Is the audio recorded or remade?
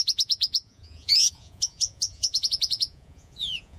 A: remade